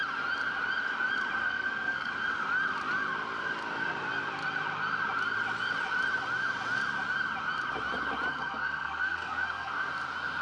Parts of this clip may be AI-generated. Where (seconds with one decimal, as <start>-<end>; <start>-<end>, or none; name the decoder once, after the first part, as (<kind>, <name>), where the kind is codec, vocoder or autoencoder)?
1.4-2.1 (codec, SNAC); 8.3-9.9